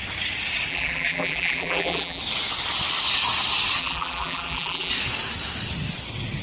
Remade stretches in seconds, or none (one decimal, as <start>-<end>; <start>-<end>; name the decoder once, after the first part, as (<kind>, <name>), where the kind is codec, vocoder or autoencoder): 0.7-2.2 (vocoder, BigVGAN v2); 3.8-4.9